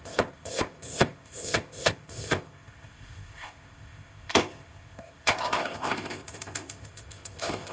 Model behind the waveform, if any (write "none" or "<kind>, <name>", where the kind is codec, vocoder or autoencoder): codec, ZipCodec